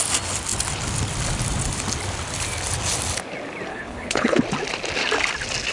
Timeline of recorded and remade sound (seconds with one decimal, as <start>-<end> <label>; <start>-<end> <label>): 0.0-3.7 recorded; 3.7-4.4 remade; 4.4-5.7 recorded